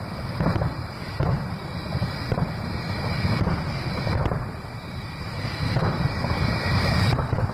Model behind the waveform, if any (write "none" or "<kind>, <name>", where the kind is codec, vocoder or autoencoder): vocoder, BigVGAN v2